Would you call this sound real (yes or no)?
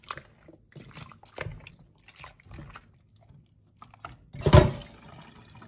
yes